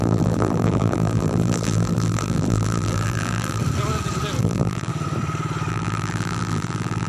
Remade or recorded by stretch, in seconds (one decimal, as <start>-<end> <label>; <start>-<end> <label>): 0.0-3.6 remade; 3.6-4.4 recorded; 4.4-4.9 remade; 4.9-5.7 recorded; 5.7-7.1 remade